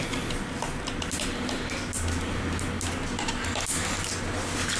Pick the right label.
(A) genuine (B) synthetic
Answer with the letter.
A